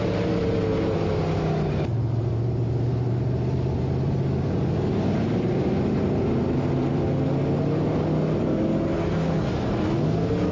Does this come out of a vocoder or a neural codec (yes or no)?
no